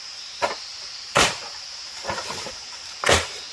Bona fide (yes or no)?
no